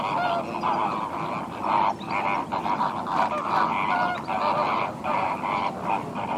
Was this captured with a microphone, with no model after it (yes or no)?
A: yes